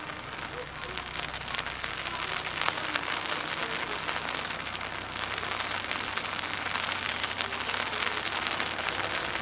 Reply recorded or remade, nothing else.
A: recorded